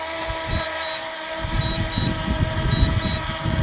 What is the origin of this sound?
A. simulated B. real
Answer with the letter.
B